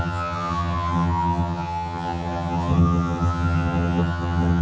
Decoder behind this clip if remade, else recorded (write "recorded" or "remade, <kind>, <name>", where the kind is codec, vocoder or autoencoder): remade, vocoder, HiFi-GAN